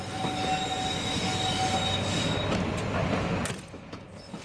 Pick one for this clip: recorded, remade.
recorded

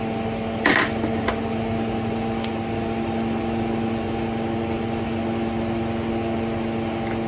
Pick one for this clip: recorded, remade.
recorded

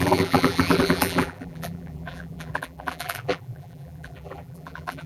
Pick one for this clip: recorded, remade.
remade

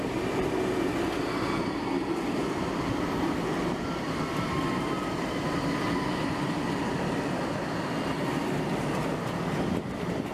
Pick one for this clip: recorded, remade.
recorded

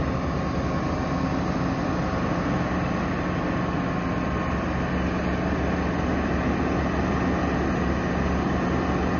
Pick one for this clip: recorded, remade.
recorded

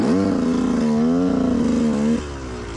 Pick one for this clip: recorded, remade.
recorded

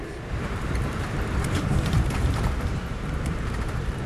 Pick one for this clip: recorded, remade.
remade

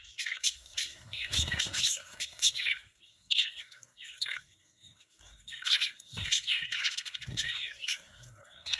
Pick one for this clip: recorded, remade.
remade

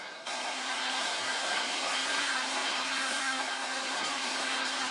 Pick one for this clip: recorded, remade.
remade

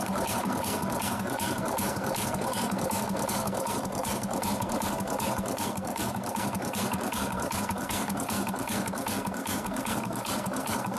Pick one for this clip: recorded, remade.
remade